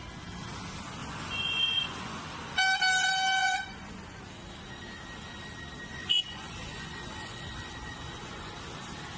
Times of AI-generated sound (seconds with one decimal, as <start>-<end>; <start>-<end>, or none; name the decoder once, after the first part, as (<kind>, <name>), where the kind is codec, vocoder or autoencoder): 1.0-2.2 (vocoder, Vocos); 3.4-4.2; 5.9-8.5